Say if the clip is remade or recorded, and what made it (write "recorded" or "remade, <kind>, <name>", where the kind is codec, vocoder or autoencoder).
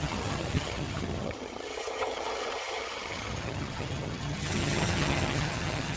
remade, vocoder, HiFi-GAN